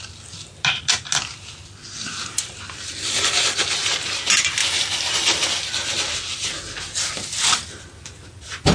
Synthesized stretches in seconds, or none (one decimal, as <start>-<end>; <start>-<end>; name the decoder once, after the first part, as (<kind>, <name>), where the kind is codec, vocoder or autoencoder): none